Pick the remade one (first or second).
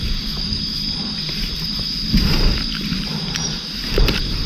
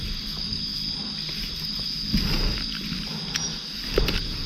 first